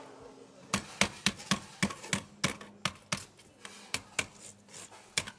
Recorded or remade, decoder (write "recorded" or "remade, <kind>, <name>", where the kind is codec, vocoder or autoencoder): recorded